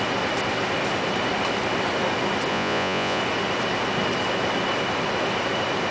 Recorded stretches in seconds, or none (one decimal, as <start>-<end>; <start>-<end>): 0.0-2.5; 3.2-5.9